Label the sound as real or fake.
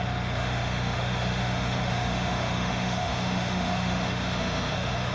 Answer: fake